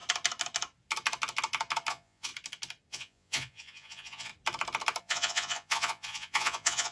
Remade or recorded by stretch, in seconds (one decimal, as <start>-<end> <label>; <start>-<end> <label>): 0.0-1.9 recorded; 1.9-2.3 remade; 2.3-2.9 recorded; 2.9-4.3 remade; 4.3-5.0 recorded; 5.0-6.9 remade